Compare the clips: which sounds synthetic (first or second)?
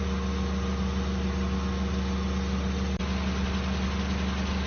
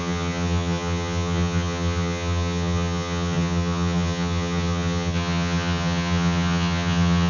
second